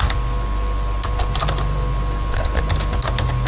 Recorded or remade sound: recorded